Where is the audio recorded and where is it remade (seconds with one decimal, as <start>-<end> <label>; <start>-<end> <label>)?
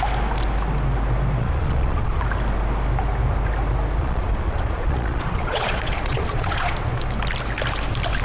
0.0-1.4 recorded; 1.4-2.2 remade; 2.2-4.0 recorded; 4.0-7.0 remade; 7.0-8.2 recorded